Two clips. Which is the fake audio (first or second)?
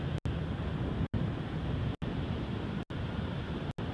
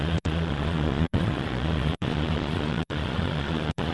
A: second